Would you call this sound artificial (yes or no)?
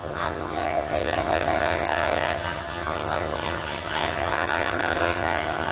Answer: yes